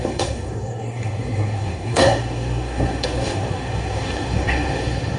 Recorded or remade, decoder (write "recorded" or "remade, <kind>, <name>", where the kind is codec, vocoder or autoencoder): remade, codec, SNAC